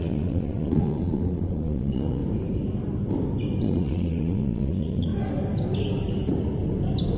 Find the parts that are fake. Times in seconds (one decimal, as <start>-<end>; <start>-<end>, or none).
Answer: 0.0-2.2; 3.6-5.1